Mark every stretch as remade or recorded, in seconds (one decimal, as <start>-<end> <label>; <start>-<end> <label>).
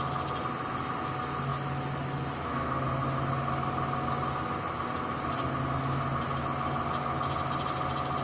0.0-8.2 recorded